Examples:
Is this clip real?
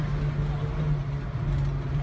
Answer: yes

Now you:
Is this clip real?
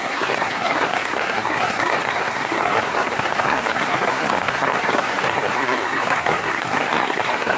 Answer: no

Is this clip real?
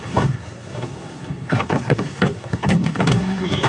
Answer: no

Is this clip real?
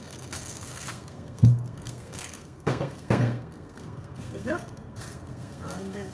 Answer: no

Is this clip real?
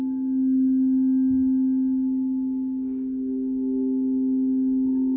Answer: yes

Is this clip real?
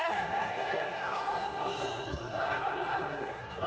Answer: no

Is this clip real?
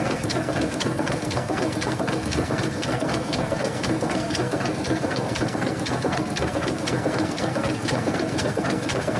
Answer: no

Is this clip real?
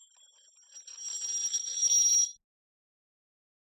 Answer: yes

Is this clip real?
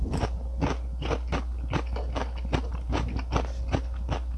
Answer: yes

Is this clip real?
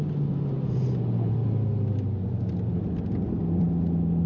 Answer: yes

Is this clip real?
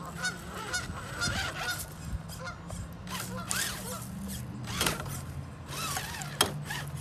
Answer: yes